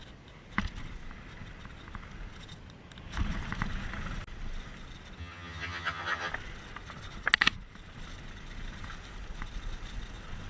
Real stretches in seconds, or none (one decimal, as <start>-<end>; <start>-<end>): 0.0-5.2; 6.3-10.5